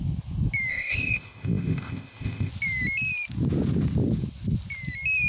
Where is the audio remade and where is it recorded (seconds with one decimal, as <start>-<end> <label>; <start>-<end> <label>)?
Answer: 0.0-0.7 recorded; 0.7-2.5 remade; 2.5-5.3 recorded